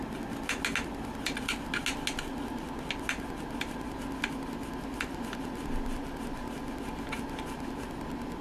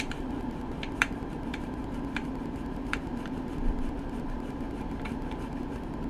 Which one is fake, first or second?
second